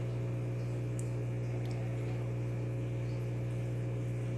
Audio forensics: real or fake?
real